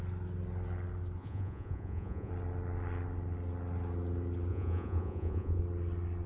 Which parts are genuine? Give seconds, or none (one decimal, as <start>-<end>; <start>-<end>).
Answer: 0.0-1.2; 2.3-4.5; 5.6-6.3